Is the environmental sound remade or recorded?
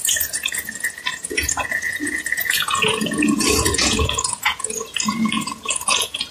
remade